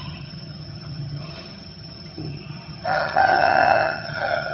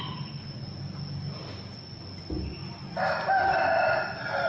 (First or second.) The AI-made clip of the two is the first